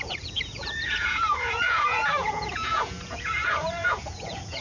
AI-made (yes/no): yes